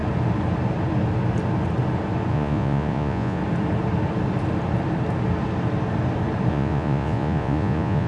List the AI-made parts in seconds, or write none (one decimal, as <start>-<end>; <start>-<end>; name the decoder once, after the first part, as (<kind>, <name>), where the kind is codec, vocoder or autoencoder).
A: 2.3-3.4 (vocoder, Vocos); 6.5-8.1